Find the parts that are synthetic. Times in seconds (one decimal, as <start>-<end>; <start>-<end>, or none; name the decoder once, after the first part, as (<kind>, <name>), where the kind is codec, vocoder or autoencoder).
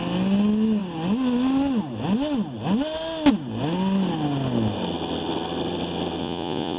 6.2-6.8 (vocoder, Vocos)